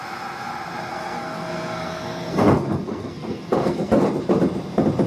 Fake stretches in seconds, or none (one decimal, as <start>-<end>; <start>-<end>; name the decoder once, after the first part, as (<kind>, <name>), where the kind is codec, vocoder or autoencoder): 0.9-4.0 (codec, SNAC)